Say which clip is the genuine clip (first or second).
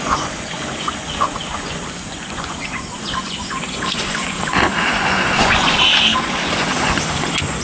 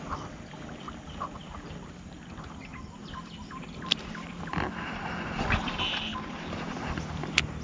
second